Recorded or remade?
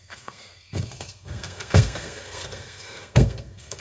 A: remade